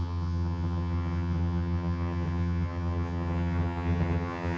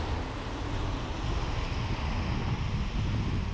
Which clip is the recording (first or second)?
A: second